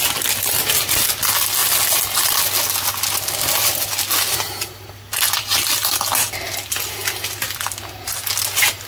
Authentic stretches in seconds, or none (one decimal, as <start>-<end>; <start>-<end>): 0.0-8.9

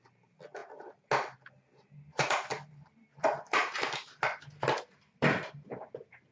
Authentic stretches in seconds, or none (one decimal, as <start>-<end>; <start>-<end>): 0.6-2.7